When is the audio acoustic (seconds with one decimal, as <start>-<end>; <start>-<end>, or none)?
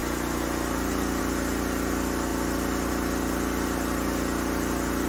0.0-5.1